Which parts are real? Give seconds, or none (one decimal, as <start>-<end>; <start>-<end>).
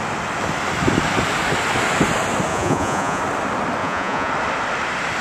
0.0-2.5; 3.2-3.8; 4.3-5.2